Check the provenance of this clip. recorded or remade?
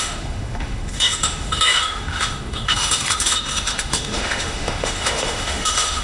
remade